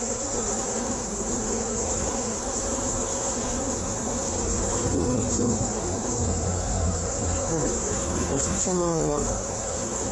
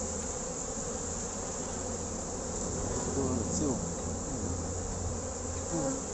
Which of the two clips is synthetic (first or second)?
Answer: first